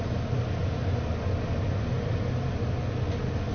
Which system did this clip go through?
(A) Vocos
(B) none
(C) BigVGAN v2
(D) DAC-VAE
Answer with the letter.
B